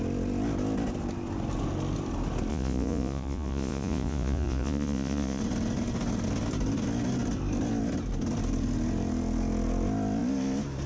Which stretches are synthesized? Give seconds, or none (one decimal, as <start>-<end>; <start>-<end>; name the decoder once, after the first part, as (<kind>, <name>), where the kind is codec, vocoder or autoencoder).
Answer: 2.5-5.4 (vocoder, Vocos)

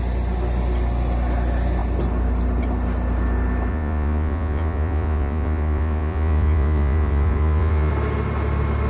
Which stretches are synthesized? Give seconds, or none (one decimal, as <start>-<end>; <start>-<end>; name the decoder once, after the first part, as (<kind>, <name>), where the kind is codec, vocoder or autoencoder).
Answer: 3.7-7.9 (vocoder, Vocos)